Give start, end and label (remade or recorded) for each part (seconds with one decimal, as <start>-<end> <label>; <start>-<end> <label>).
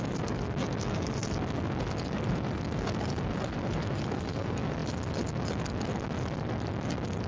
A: 0.0-7.3 recorded